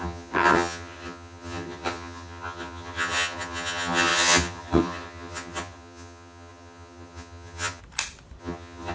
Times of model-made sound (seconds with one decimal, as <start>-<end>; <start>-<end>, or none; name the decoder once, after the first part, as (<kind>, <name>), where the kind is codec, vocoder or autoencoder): 0.0-7.8 (vocoder, HiFi-GAN); 8.4-8.9